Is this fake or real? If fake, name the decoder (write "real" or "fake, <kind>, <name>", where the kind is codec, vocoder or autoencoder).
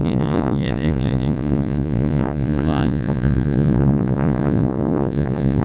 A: fake, vocoder, Vocos